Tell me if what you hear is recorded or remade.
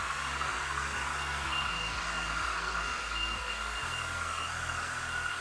remade